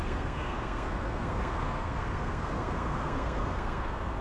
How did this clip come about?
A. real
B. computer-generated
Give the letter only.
B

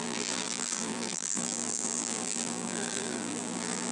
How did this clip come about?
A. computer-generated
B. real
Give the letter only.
A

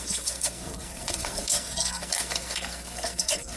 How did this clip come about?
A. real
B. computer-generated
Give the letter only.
B